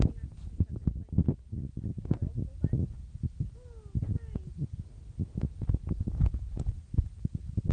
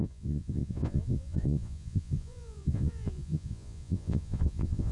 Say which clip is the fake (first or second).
second